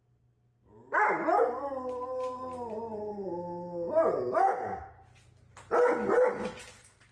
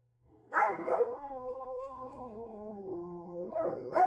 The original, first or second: first